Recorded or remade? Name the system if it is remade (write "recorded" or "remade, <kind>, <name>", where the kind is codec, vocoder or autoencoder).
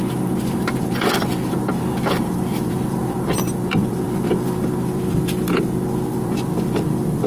remade, vocoder, BigVGAN v2